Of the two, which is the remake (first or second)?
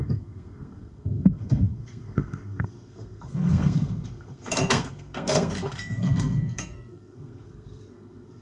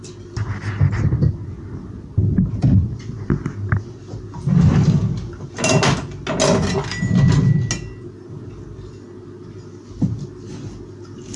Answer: first